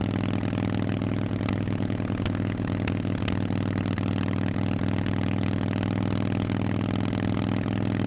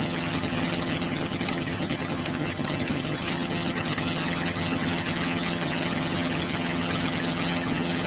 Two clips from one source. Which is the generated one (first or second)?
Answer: second